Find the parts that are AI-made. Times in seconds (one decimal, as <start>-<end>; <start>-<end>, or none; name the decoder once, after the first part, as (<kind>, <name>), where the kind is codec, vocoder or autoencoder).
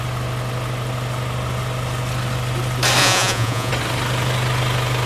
3.0-3.7 (vocoder, Vocos)